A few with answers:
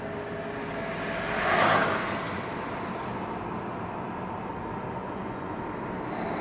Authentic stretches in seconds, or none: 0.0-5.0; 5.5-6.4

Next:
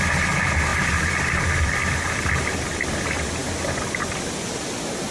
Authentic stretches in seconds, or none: 0.0-5.1

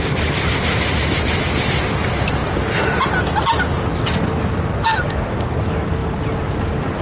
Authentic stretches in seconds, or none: 0.0-7.0

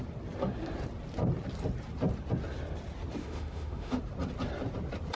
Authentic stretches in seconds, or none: 0.0-3.2; 4.0-5.2

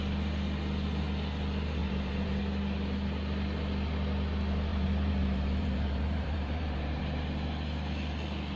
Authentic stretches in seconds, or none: 0.0-1.8; 2.4-4.7; 7.0-8.6